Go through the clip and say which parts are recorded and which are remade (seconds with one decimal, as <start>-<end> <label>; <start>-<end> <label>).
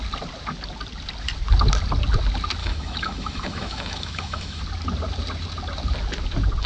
0.0-2.6 recorded; 2.6-4.6 remade; 4.6-6.7 recorded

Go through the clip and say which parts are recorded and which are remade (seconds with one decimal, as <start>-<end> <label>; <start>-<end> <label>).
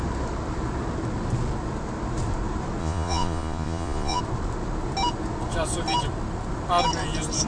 0.0-2.8 recorded; 2.8-4.2 remade; 4.2-7.5 recorded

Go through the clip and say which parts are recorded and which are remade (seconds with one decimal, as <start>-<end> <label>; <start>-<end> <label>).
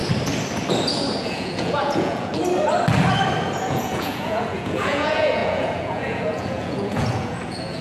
0.0-1.2 recorded; 1.2-2.3 remade; 2.3-3.6 recorded; 3.6-7.8 remade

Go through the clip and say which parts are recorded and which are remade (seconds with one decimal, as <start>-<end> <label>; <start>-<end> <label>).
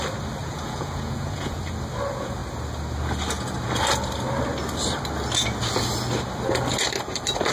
0.0-0.4 recorded; 0.4-1.6 remade; 1.6-7.5 recorded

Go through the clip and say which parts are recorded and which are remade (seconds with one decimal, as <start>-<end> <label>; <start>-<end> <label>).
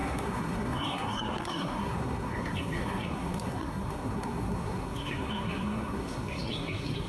0.0-7.1 remade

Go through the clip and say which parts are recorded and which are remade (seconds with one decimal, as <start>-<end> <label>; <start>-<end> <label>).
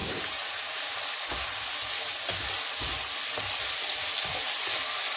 0.0-0.6 remade; 0.6-5.2 recorded